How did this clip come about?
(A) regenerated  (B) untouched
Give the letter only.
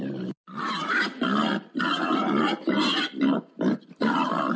B